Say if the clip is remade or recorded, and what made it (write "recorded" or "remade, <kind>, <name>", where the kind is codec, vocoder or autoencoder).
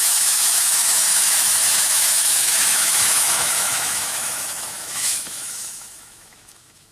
remade, autoencoder, DAC-VAE